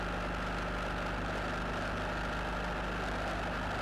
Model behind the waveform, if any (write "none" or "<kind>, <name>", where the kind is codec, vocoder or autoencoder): none